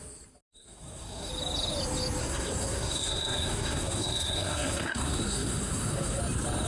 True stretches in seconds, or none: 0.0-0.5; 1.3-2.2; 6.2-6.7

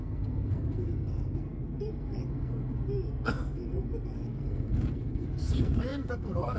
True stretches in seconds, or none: none